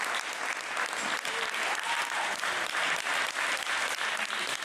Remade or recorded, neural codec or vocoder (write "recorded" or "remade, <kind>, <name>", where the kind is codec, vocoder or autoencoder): recorded